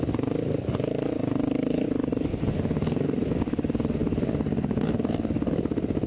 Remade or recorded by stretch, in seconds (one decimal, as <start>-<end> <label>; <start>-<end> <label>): 0.0-6.1 recorded